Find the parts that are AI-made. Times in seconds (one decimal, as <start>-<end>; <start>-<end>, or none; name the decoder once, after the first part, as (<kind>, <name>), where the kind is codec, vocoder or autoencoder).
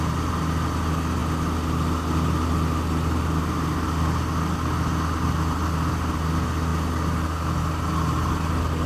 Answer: none